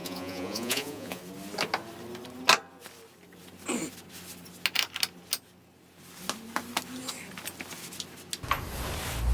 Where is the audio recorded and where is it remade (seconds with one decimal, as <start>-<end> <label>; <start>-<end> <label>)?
0.0-1.2 remade; 1.2-9.3 recorded